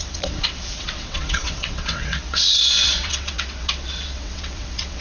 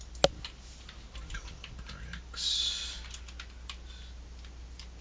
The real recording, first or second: second